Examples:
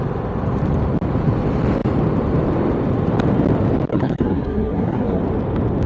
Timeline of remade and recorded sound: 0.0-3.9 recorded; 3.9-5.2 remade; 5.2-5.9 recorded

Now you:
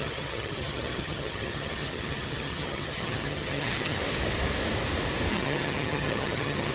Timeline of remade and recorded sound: 0.0-4.0 remade; 4.0-5.3 recorded; 5.3-6.7 remade

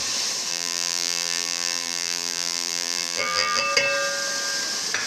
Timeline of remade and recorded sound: 0.0-0.5 recorded; 0.5-3.6 remade; 3.6-5.1 recorded